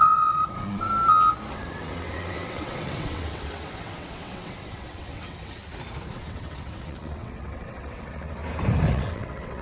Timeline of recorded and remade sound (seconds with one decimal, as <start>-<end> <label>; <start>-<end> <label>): 0.0-0.9 remade; 0.9-1.5 recorded; 1.5-5.6 remade; 5.6-6.1 recorded; 6.1-8.4 remade; 8.4-8.9 recorded; 8.9-9.6 remade